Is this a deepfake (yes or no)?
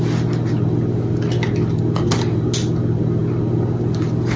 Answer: no